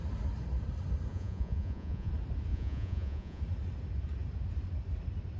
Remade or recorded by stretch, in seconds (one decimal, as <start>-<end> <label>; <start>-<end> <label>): 0.0-1.1 recorded; 1.1-2.1 remade; 2.1-2.5 recorded; 2.5-3.4 remade; 3.4-5.4 recorded